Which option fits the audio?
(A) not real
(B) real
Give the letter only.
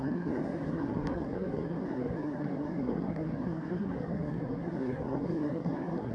A